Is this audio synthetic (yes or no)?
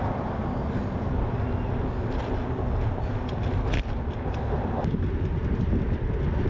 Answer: no